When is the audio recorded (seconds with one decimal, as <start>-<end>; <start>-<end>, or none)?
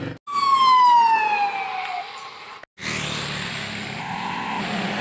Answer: 0.0-4.0; 4.6-5.0